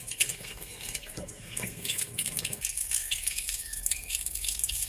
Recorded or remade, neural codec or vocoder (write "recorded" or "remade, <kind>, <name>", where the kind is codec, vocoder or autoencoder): remade, codec, SNAC